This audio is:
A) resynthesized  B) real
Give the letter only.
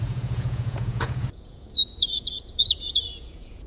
A